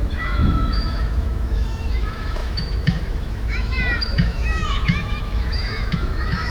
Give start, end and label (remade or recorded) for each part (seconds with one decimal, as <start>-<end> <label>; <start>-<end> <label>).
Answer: 0.0-6.5 remade